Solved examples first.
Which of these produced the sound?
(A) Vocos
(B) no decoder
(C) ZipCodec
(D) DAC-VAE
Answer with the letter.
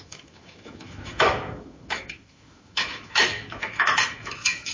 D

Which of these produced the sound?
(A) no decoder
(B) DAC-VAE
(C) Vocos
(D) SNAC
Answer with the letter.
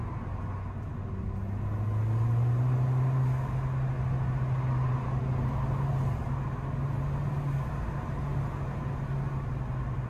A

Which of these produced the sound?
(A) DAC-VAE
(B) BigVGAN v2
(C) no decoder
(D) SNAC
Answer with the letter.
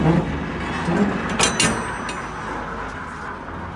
C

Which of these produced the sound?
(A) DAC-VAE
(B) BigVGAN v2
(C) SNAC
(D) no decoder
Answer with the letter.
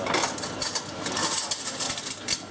D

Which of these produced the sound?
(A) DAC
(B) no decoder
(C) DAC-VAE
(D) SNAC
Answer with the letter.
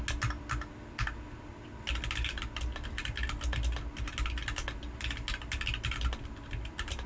B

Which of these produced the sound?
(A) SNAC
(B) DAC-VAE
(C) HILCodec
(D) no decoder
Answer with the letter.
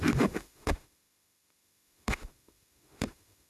B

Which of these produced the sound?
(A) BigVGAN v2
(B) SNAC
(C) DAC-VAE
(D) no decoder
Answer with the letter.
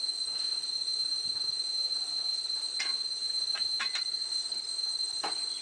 D